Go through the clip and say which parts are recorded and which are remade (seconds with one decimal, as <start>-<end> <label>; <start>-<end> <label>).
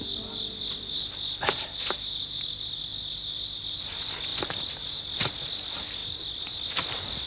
0.0-7.3 recorded